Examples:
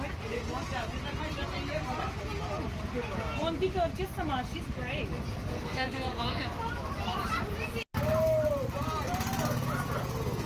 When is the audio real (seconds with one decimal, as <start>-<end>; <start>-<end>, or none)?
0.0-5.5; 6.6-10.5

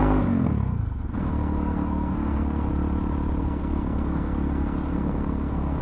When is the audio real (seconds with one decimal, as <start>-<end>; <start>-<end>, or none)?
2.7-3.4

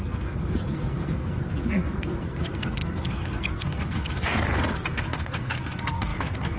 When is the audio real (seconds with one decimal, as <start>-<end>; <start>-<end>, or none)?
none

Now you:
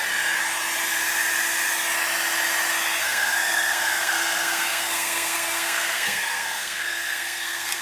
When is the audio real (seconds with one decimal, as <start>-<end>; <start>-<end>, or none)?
0.0-3.0

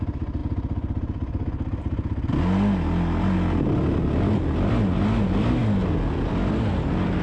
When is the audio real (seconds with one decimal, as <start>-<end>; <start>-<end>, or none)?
0.0-7.2